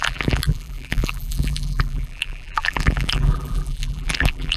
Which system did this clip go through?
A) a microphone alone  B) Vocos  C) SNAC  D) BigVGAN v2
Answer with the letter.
D